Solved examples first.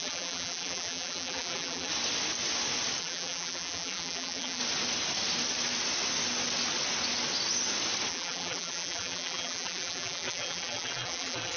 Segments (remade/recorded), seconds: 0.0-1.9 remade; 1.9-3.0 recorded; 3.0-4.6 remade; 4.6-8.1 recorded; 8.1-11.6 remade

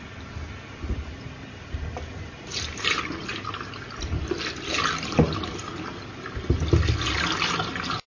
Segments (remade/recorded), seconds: 0.0-8.1 recorded

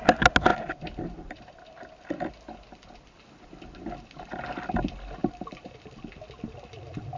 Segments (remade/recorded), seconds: 0.0-0.5 recorded; 0.5-2.3 remade; 2.3-5.2 recorded; 5.2-6.1 remade; 6.1-7.2 recorded